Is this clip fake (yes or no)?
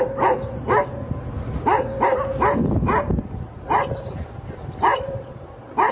no